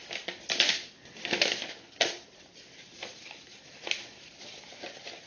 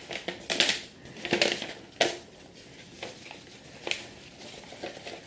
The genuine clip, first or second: second